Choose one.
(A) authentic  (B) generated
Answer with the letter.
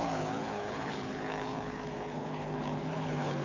B